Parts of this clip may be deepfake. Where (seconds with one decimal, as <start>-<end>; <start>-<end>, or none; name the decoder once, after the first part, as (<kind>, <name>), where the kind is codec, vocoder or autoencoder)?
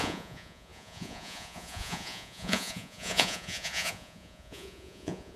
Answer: 0.0-5.4 (vocoder, Vocos)